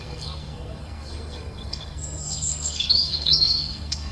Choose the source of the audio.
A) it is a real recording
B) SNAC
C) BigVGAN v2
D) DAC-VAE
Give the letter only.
B